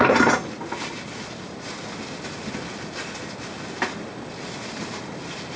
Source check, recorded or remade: recorded